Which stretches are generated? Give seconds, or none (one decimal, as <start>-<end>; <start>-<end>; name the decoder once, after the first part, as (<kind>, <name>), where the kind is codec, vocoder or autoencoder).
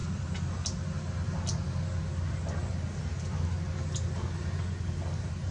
none